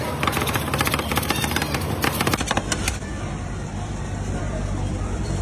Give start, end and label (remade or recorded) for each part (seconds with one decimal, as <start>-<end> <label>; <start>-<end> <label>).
0.0-0.9 recorded; 0.9-5.4 remade